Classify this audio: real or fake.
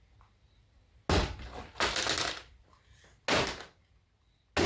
real